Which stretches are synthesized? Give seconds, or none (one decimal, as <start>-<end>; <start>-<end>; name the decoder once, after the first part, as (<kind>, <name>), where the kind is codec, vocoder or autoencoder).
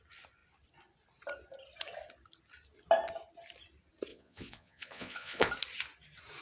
4.1-5.5 (vocoder, Vocos)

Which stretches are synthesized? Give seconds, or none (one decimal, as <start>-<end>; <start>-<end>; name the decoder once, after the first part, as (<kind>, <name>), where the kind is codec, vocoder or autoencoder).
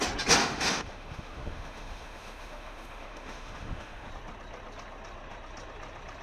0.4-4.1 (autoencoder, DAC-VAE)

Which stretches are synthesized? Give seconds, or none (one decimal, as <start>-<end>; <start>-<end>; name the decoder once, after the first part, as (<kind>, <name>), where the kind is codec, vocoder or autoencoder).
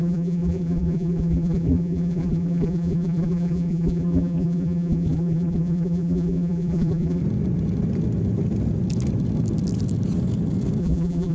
0.0-7.2 (vocoder, BigVGAN v2); 10.8-11.3